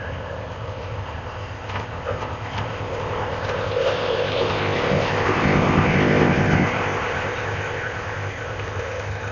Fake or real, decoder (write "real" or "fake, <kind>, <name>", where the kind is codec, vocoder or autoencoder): fake, codec, ZipCodec